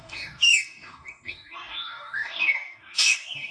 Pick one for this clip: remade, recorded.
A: remade